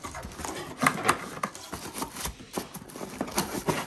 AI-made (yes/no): no